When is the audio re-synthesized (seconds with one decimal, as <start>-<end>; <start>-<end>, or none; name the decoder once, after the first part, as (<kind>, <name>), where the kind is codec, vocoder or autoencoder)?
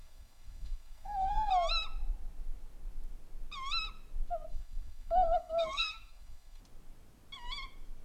0.0-1.5 (codec, SNAC); 4.5-6.6